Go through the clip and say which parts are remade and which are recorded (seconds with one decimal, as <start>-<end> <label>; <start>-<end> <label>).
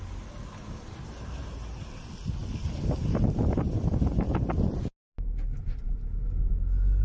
0.0-0.6 recorded; 0.6-1.9 remade; 1.9-7.0 recorded